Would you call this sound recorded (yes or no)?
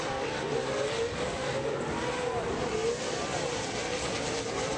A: yes